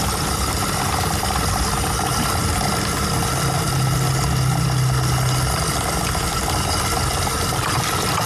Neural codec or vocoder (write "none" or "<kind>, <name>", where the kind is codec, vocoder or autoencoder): none